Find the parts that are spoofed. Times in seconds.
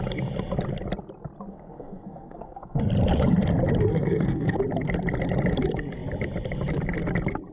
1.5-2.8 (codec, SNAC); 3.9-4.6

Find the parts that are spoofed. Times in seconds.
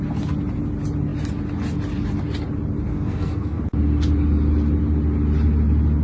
2.9-3.6 (codec, SNAC)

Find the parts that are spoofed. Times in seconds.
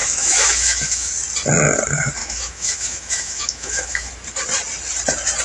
0.0-1.1 (autoencoder, DAC-VAE); 2.2-4.1